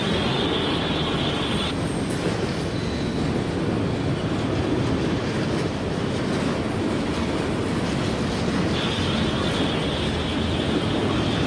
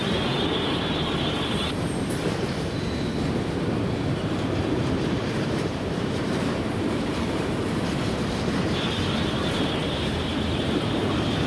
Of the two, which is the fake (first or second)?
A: second